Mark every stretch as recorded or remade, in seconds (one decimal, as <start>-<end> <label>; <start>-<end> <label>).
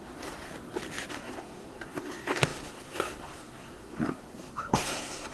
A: 0.0-0.5 remade; 0.5-1.1 recorded; 1.1-5.3 remade